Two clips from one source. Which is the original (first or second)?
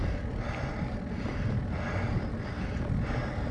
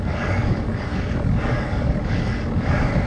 first